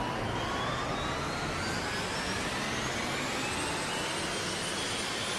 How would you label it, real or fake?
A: real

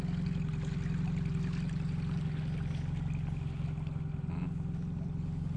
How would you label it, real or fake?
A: real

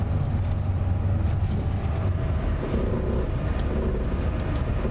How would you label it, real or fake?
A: real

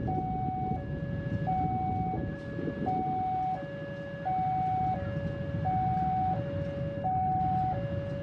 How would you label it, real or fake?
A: real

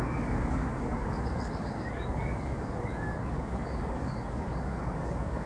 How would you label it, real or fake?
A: fake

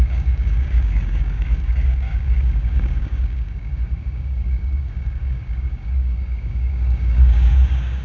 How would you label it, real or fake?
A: fake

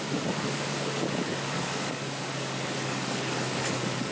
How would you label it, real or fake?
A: fake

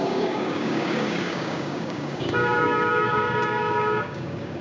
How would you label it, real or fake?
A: fake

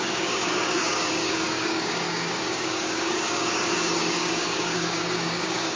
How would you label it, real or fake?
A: fake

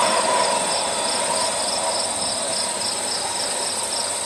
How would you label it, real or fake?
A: real